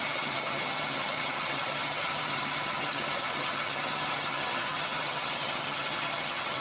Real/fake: fake